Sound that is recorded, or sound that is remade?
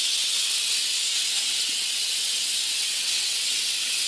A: remade